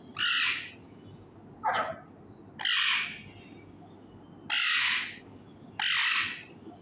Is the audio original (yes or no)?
yes